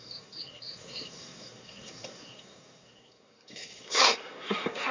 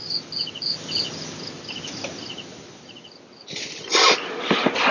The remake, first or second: first